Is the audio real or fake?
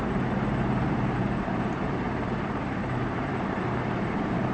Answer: fake